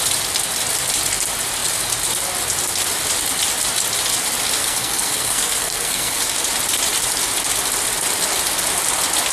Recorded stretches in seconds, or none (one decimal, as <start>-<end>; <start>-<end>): 0.0-4.6; 6.2-9.3